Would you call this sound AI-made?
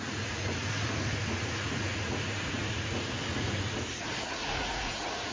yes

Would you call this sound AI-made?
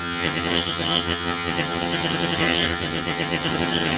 yes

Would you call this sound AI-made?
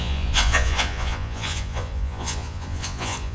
yes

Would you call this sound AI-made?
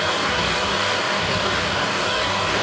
yes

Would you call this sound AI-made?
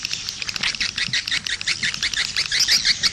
no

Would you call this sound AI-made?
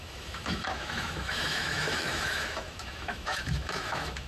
yes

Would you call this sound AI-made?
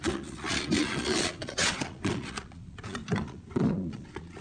yes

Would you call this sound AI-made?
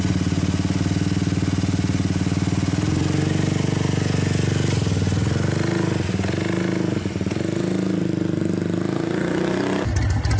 no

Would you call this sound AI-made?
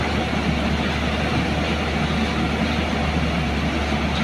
no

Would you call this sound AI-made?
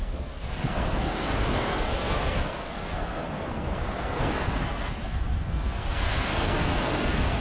yes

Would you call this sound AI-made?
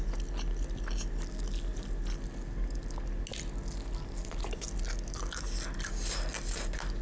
no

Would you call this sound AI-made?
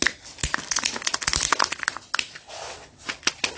no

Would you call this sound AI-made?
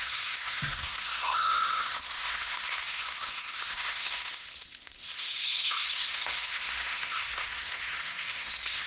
yes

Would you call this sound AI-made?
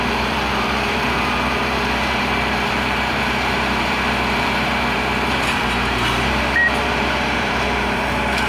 yes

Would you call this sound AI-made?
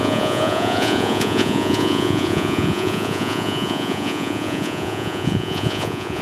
yes